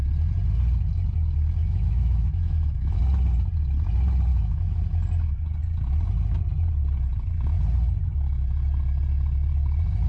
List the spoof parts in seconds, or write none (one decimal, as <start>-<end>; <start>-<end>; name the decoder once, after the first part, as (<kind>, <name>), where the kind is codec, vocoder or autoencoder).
1.6-3.0 (autoencoder, DAC-VAE); 4.3-4.8